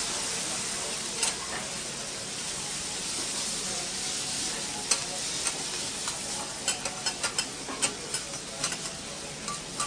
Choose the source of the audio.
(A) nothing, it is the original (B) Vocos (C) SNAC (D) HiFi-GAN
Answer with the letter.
A